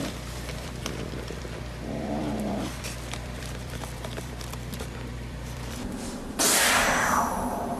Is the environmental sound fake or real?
fake